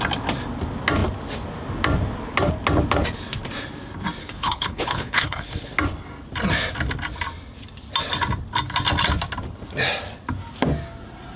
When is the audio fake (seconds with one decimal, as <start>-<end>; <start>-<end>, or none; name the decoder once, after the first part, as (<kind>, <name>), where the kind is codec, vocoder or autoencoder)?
4.2-5.7 (codec, HILCodec)